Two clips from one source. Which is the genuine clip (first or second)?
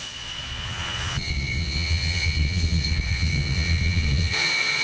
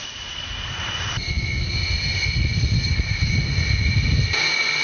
second